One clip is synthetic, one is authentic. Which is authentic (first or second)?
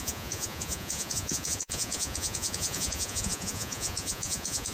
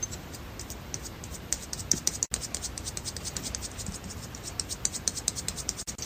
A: second